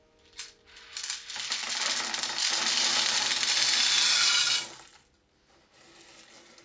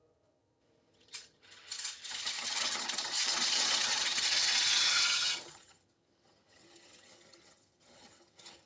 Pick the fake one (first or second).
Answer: second